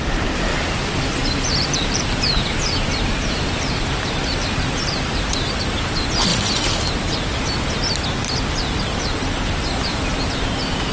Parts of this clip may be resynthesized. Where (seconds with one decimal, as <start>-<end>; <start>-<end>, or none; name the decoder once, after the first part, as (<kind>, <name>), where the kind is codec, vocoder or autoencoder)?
0.5-5.6 (vocoder, BigVGAN v2); 6.3-7.4